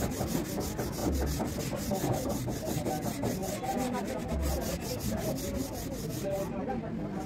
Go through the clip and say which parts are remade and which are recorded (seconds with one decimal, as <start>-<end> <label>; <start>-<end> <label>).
0.0-7.3 recorded